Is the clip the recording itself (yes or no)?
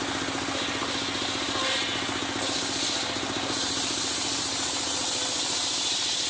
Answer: yes